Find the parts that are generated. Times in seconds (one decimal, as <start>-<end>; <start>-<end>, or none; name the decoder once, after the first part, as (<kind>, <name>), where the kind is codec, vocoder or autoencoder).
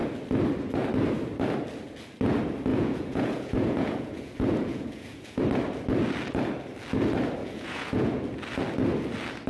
2.7-5.4 (vocoder, Vocos); 7.4-8.1